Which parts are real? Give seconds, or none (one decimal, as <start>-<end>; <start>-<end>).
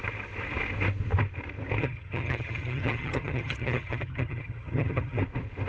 0.0-1.8; 5.2-5.7